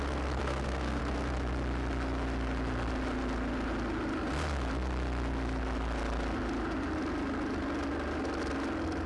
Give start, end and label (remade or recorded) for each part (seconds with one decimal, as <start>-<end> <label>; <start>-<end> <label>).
0.0-0.4 recorded; 0.4-1.0 remade; 1.0-9.1 recorded